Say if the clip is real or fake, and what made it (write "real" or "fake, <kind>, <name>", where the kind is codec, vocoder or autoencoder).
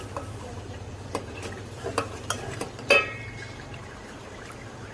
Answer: fake, vocoder, BigVGAN v2